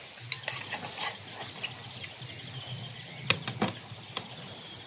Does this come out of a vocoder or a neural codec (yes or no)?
no